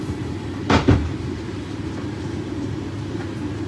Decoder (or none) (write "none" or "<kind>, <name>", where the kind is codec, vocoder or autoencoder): vocoder, BigVGAN v2